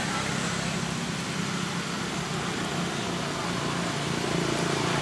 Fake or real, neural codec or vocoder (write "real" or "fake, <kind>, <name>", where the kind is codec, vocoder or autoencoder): real